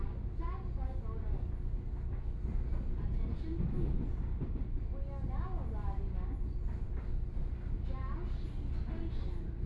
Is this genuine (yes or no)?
yes